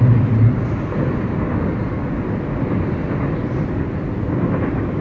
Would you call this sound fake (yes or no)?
no